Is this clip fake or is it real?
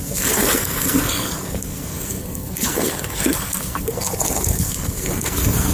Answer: fake